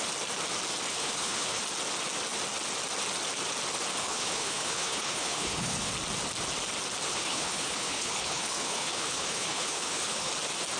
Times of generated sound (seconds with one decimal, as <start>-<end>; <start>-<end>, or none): 0.9-1.6; 4.0-5.9; 7.1-10.3